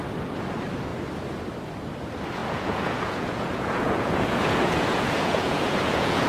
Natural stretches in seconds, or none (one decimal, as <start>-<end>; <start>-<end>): 0.0-2.4